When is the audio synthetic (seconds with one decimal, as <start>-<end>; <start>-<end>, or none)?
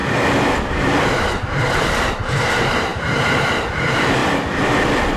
0.6-4.2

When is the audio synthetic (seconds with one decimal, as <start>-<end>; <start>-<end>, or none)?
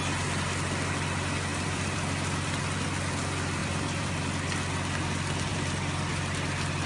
1.5-2.6; 3.6-4.1; 5.5-6.1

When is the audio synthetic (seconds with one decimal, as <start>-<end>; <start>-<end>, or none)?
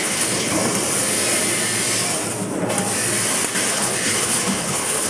0.0-0.6; 3.7-5.1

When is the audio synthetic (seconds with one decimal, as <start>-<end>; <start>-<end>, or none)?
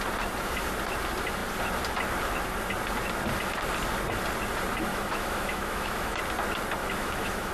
4.9-6.2; 6.8-7.5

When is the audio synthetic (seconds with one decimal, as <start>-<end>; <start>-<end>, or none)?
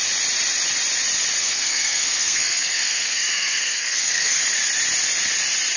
1.4-4.4